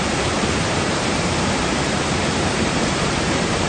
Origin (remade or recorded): remade